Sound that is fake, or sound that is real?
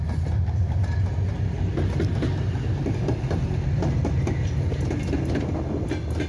real